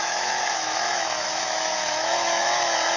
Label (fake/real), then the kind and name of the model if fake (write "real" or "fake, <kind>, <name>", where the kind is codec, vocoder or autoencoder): fake, autoencoder, DAC-VAE